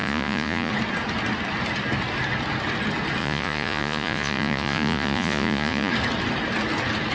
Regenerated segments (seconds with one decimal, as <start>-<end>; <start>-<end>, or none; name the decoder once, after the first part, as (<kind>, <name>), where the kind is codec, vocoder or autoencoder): 0.0-0.7 (vocoder, Vocos); 3.2-5.9